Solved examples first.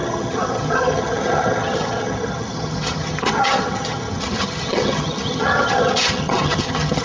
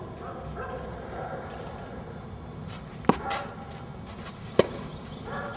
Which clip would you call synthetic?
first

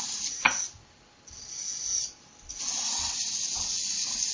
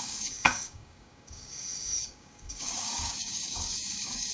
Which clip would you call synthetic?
second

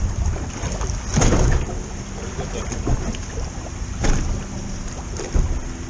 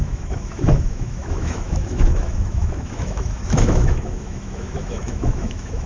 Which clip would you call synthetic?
second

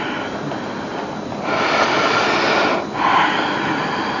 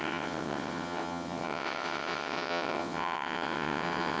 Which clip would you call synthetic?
second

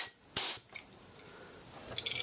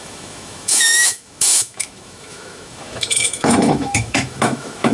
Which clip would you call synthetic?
second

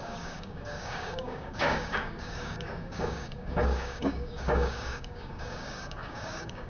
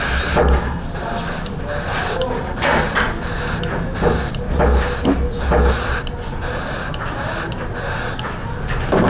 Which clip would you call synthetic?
first